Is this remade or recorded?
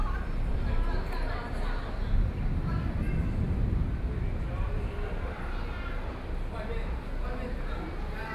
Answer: recorded